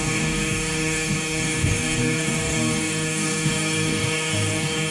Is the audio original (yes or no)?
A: no